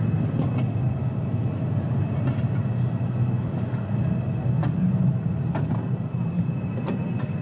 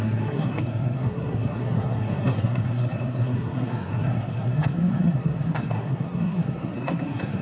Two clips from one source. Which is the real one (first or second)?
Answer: first